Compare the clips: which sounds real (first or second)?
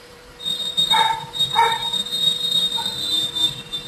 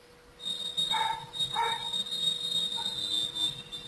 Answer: second